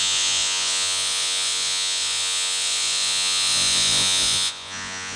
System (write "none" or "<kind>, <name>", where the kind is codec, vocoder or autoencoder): vocoder, Vocos